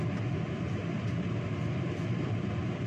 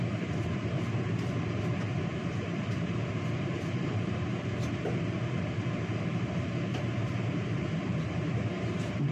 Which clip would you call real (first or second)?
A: first